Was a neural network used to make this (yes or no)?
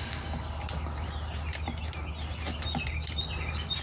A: no